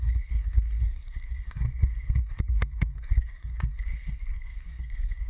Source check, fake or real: fake